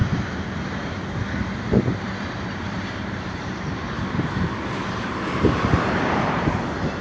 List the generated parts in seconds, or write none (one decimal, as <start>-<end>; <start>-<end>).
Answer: 1.8-7.0